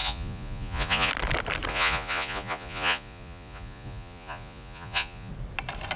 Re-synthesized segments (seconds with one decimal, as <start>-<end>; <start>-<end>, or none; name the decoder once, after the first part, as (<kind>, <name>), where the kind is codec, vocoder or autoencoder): 0.0-1.1 (vocoder, Vocos); 1.7-5.3